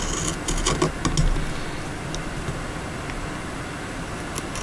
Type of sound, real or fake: real